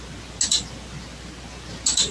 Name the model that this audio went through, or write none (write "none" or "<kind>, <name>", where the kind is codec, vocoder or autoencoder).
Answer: none